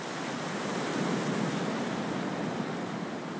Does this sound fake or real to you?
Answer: real